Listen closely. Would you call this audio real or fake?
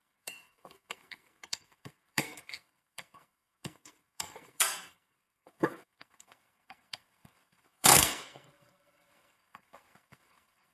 fake